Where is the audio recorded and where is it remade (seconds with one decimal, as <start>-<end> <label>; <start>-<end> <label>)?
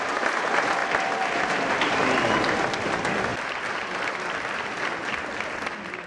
0.0-6.1 recorded